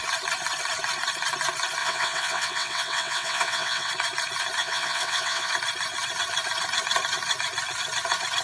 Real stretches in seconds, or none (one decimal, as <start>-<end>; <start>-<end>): 0.0-1.8; 3.9-4.6; 5.5-8.4